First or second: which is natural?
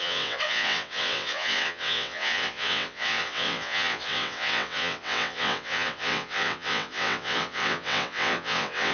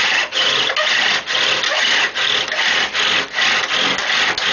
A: second